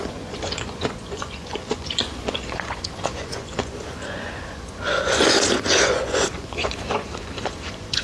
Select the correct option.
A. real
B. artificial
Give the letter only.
B